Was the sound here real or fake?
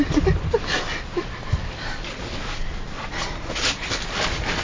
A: real